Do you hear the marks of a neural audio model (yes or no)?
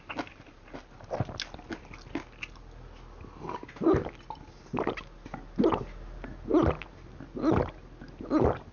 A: no